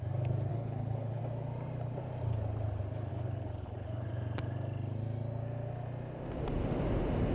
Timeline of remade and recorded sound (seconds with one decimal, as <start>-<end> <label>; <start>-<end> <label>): 0.0-0.5 recorded; 0.5-1.2 remade; 1.2-3.1 recorded; 3.1-4.1 remade; 4.1-7.3 recorded